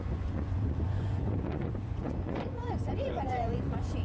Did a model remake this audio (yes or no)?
yes